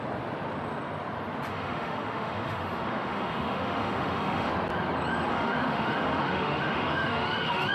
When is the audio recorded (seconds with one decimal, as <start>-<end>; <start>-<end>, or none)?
0.0-1.5; 4.5-5.3